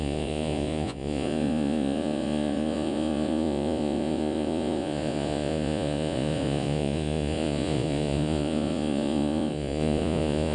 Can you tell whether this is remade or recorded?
remade